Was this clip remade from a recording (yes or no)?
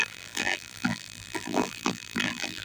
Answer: yes